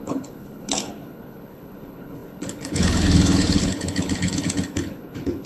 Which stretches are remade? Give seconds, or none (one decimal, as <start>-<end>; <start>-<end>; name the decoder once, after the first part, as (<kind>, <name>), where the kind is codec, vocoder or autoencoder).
0.0-5.5 (codec, HILCodec)